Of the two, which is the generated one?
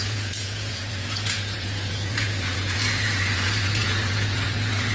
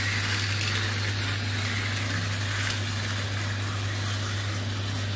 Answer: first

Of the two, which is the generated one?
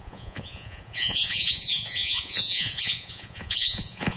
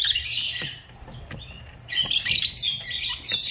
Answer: first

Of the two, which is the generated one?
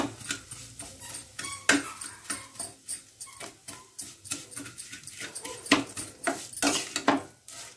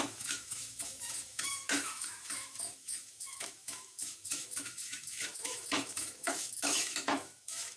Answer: second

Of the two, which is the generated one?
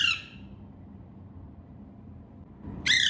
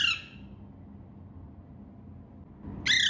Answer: first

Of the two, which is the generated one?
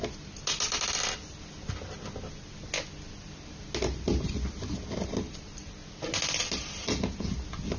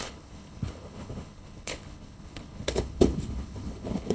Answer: second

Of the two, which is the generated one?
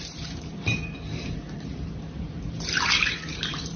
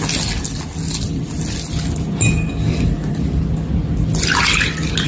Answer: first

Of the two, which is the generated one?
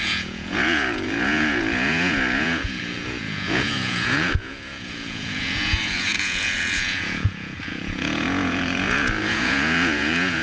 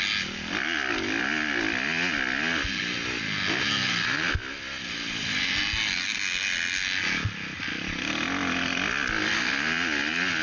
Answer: first